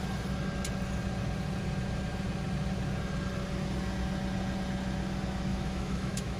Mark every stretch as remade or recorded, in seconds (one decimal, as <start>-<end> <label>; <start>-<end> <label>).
0.0-5.5 recorded; 5.5-6.4 remade